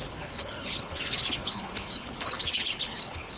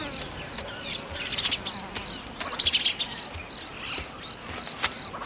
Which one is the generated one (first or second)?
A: first